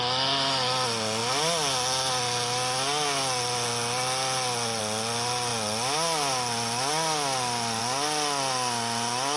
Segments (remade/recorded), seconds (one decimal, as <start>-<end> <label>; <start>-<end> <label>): 0.0-9.4 recorded